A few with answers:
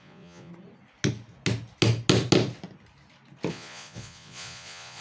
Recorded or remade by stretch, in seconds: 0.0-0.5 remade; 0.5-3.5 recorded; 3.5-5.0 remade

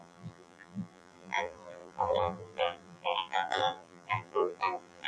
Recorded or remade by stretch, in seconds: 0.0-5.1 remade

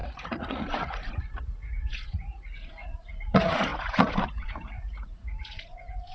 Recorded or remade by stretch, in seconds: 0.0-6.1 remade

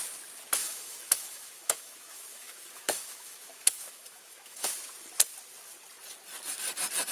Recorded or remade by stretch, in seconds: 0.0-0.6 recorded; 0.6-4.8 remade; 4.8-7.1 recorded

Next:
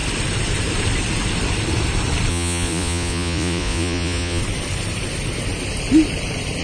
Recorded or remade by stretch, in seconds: 0.0-2.3 recorded; 2.3-4.4 remade; 4.4-6.6 recorded